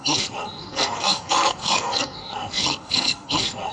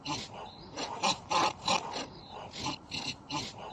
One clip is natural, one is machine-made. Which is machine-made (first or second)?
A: first